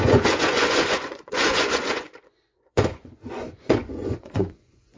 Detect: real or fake fake